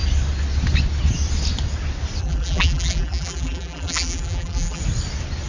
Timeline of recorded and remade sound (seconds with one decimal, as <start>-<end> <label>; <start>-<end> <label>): 0.0-2.2 recorded; 2.2-4.8 remade; 4.8-5.5 recorded